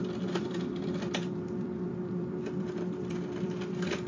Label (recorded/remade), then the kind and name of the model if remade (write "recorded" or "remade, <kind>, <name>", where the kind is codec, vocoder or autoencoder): remade, vocoder, BigVGAN v2